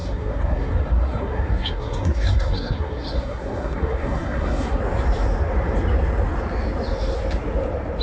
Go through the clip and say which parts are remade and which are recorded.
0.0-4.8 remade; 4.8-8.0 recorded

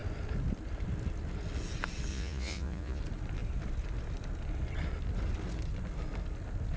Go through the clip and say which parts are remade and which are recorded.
0.0-2.1 recorded; 2.1-3.0 remade; 3.0-6.8 recorded